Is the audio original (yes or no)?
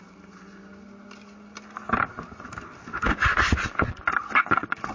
yes